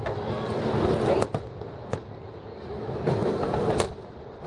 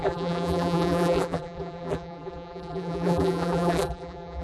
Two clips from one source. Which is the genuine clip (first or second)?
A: first